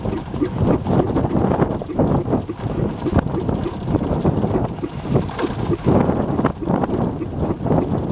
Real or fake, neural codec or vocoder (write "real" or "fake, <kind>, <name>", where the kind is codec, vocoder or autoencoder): real